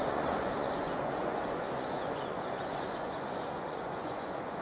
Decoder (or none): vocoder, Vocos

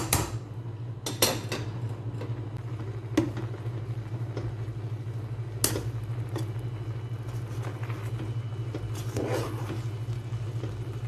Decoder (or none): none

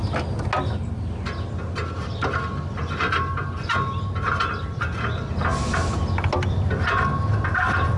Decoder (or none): none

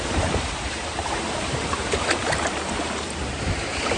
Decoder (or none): vocoder, BigVGAN v2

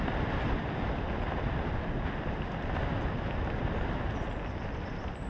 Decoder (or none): none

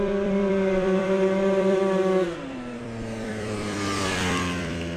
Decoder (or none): vocoder, BigVGAN v2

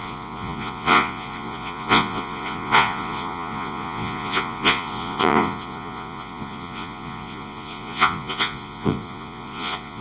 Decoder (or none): vocoder, Vocos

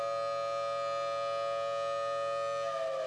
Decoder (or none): none